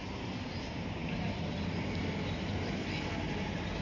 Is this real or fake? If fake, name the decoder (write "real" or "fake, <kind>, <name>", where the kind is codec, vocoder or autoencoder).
real